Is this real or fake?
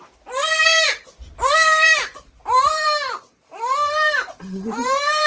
fake